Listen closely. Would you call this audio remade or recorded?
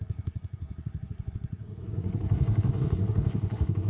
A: remade